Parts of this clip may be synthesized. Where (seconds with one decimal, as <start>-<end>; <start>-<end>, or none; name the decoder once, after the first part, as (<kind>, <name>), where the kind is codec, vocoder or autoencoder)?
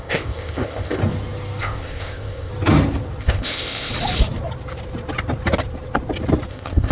0.0-1.0 (codec, ZipCodec); 1.6-2.5; 3.2-3.9; 6.5-6.9